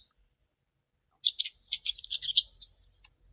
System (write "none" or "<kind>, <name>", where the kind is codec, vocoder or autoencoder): none